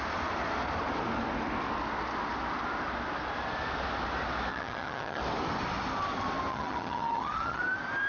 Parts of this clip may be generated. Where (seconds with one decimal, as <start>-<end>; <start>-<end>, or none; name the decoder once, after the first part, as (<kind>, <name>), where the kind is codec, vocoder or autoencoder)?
4.5-5.2 (vocoder, HiFi-GAN); 6.5-7.6

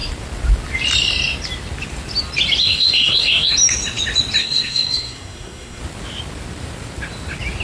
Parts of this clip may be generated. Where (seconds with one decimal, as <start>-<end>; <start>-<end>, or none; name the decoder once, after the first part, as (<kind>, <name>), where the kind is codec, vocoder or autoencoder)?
2.6-3.5 (codec, SNAC); 4.4-5.8